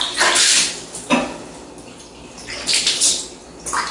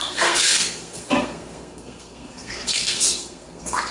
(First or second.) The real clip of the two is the first